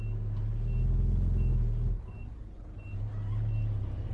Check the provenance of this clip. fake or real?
real